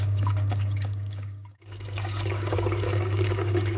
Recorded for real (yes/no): no